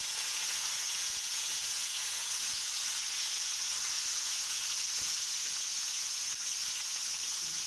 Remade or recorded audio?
remade